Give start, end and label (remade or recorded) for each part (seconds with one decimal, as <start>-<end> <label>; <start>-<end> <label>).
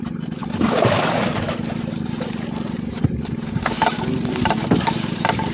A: 0.0-0.4 remade; 0.4-1.0 recorded; 1.0-5.5 remade